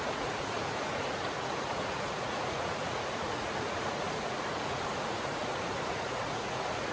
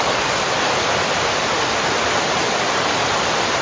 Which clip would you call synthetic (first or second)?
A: first